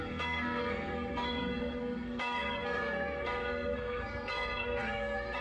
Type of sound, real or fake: fake